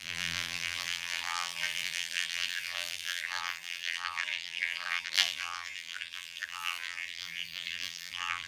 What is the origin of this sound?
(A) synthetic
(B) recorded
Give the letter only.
A